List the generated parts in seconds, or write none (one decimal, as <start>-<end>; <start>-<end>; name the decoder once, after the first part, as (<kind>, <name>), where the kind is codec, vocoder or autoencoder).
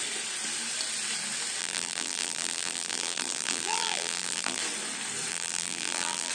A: 1.6-4.6 (vocoder, BigVGAN v2); 5.3-6.3